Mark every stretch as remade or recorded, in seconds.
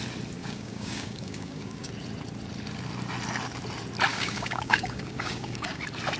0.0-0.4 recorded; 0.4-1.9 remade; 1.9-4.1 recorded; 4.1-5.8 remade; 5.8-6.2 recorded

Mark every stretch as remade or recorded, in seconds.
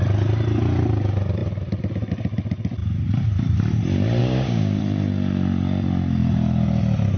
0.0-4.2 recorded; 4.2-4.8 remade; 4.8-7.2 recorded